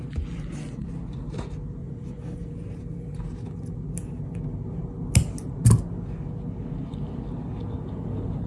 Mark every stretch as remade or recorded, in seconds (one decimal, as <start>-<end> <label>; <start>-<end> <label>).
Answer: 0.0-1.8 recorded; 1.8-2.5 remade; 2.5-8.5 recorded